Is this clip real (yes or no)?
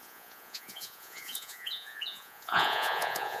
no